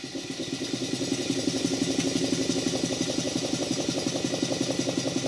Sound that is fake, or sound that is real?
real